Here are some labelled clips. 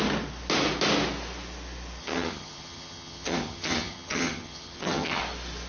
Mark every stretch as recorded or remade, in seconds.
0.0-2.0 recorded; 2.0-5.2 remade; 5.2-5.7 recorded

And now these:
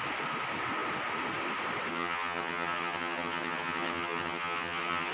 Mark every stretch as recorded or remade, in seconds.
0.0-1.9 recorded; 1.9-5.1 remade

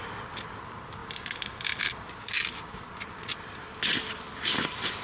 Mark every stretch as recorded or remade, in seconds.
0.0-5.0 recorded

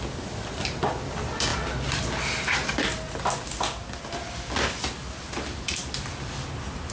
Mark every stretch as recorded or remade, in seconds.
0.0-6.9 recorded

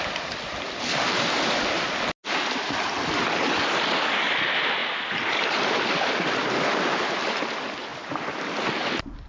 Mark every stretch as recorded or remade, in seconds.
0.0-9.3 recorded

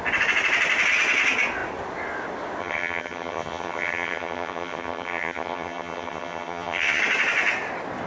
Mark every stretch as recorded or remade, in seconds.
0.0-2.6 recorded; 2.6-7.0 remade; 7.0-8.1 recorded

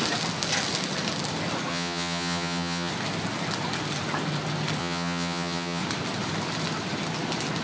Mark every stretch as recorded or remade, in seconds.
0.0-1.7 recorded; 1.7-2.9 remade; 2.9-4.8 recorded; 4.8-5.8 remade; 5.8-7.6 recorded

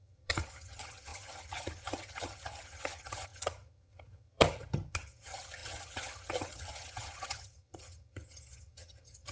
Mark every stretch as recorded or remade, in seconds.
0.0-9.3 remade